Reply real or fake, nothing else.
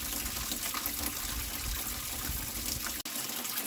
real